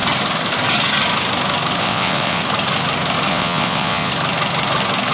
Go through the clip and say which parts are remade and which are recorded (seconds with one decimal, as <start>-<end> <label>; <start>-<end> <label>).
0.0-1.8 recorded; 1.8-2.4 remade; 2.4-3.3 recorded; 3.3-4.1 remade; 4.1-5.1 recorded